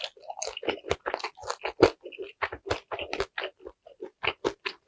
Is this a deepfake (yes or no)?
no